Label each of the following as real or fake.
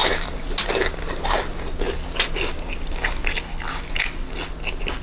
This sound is real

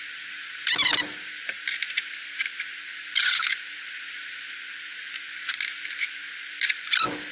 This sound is real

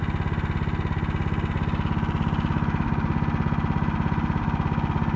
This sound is real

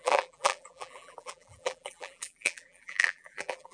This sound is fake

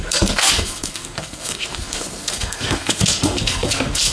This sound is fake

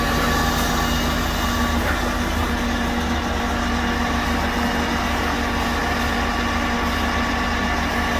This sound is real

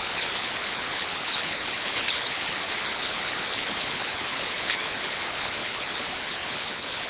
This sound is fake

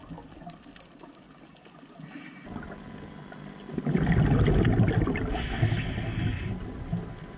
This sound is real